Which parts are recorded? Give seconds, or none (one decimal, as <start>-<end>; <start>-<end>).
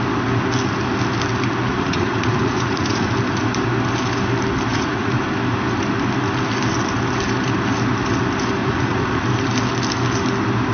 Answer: 0.0-1.7; 3.1-4.7; 5.2-8.6; 9.2-10.7